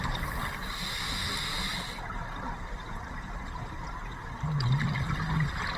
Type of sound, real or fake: fake